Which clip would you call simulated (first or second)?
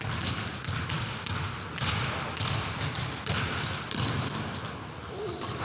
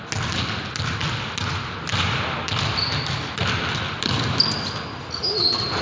first